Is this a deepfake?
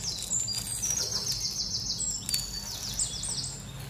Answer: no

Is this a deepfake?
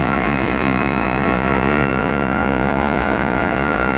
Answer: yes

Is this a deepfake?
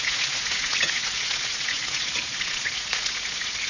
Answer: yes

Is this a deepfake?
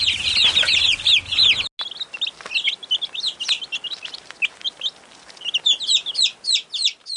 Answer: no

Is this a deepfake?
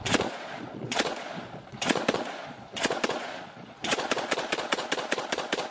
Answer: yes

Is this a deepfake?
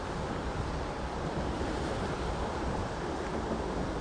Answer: no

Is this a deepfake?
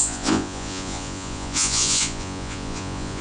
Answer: yes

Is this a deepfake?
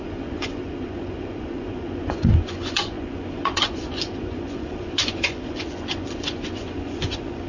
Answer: yes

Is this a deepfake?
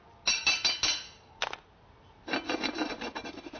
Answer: no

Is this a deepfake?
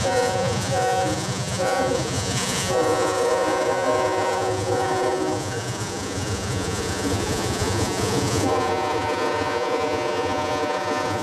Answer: yes